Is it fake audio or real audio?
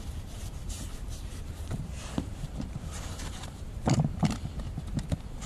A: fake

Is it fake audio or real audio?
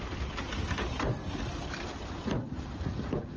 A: fake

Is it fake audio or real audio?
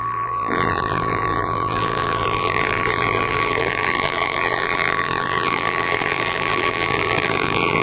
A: fake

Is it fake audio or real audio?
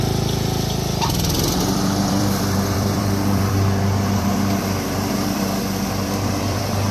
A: fake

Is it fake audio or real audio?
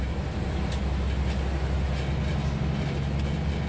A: real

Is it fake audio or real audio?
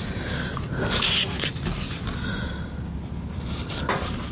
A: real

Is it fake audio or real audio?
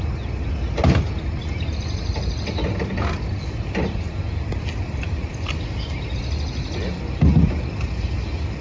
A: real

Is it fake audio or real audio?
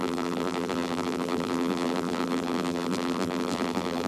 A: fake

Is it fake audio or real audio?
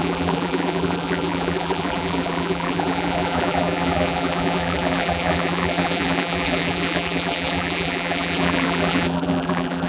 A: fake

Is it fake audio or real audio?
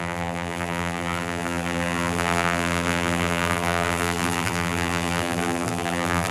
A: fake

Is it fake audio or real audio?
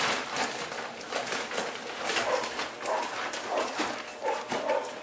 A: real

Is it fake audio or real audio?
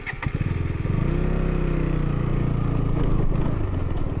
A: real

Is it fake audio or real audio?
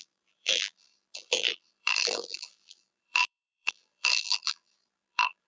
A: fake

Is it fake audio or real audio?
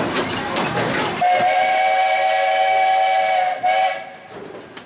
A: real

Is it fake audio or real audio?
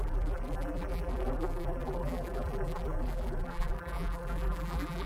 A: fake